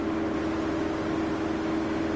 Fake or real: real